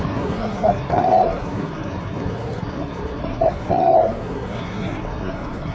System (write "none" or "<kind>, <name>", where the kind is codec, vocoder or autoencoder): codec, SNAC